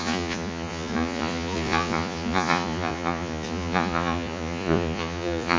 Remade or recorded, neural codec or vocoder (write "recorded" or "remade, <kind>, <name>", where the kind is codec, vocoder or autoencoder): remade, vocoder, Vocos